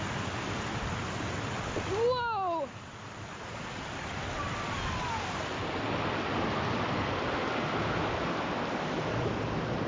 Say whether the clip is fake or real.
real